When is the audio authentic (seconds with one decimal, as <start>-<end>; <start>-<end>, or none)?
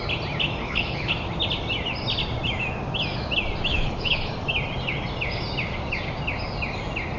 0.0-0.6; 1.1-3.7; 4.3-7.2